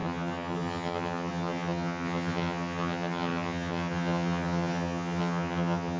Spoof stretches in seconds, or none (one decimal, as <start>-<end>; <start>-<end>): 0.0-6.0